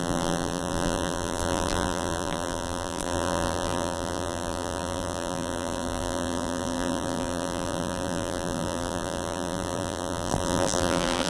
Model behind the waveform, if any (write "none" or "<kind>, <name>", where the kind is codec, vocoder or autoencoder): vocoder, BigVGAN v2